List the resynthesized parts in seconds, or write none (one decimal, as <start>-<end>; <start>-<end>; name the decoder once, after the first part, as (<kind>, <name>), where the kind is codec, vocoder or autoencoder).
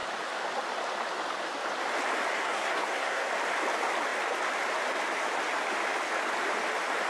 2.3-3.3 (codec, SNAC)